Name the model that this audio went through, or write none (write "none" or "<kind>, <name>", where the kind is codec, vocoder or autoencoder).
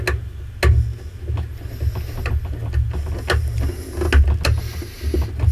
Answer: none